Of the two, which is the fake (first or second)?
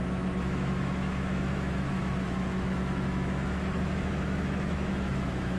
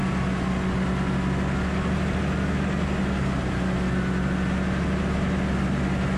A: first